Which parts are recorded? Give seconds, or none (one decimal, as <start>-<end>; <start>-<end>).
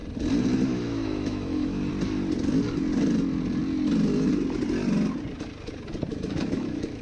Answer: 0.0-0.7; 1.9-6.1